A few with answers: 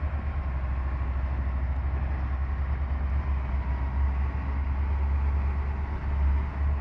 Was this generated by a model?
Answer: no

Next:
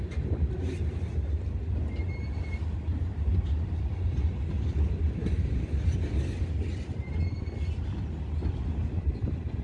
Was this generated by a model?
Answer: no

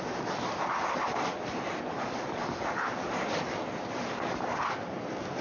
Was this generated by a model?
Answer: no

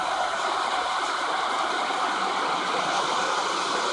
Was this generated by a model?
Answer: no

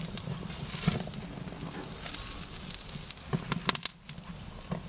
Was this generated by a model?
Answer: no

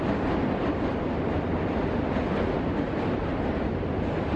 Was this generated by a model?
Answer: no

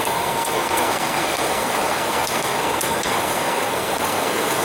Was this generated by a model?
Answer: yes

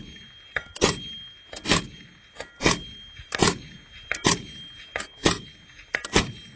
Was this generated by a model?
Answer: no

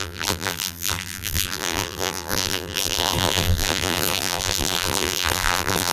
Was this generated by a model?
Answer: yes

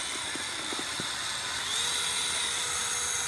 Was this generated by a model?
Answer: no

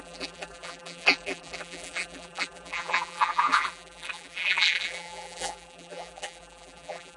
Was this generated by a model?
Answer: yes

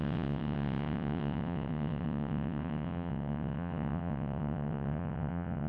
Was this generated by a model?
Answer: yes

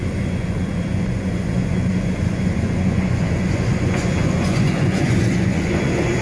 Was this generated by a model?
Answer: yes